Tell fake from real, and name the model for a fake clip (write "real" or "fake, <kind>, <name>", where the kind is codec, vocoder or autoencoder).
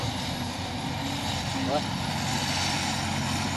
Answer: real